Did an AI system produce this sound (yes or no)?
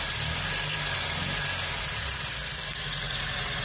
no